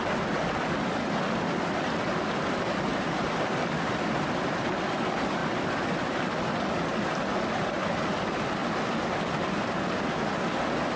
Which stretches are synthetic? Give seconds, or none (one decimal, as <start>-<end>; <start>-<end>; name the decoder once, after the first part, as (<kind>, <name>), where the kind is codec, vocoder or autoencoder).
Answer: 2.9-4.3 (vocoder, BigVGAN v2); 8.6-10.0